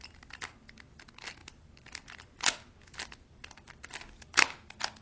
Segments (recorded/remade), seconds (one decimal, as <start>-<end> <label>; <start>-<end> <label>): 0.0-5.0 recorded